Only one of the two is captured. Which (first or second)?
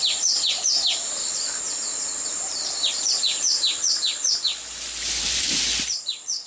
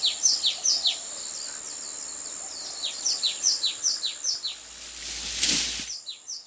second